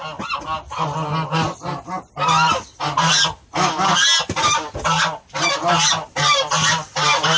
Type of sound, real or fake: real